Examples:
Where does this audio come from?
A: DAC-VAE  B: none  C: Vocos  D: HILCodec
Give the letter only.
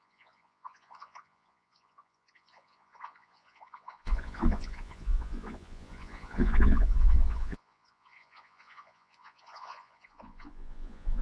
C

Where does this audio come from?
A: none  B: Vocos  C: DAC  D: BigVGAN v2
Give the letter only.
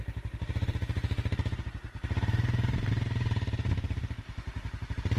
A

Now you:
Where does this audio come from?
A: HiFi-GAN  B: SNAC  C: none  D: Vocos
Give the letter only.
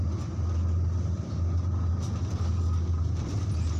C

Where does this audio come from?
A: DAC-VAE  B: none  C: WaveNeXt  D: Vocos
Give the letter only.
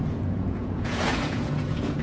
D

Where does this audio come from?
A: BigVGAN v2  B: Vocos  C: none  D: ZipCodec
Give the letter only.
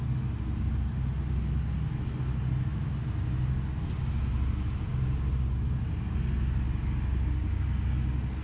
C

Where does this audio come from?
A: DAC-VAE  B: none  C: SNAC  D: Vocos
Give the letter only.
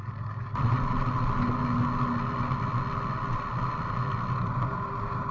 B